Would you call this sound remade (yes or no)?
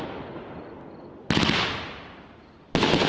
no